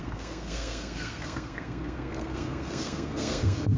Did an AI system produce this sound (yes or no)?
yes